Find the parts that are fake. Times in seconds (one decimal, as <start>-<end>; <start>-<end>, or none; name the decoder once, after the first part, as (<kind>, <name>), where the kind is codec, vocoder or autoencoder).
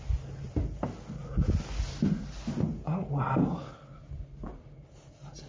none